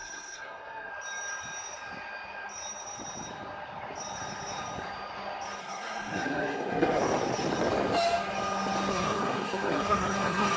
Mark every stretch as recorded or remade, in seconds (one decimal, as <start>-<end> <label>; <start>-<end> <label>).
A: 0.0-0.9 remade; 0.9-5.6 recorded; 5.6-7.0 remade; 7.0-8.9 recorded; 8.9-10.6 remade